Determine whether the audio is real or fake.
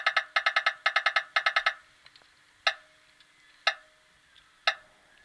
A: real